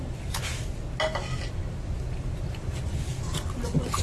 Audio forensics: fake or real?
real